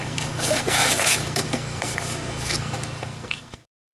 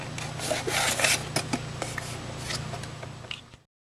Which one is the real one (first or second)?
second